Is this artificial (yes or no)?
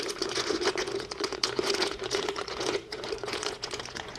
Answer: yes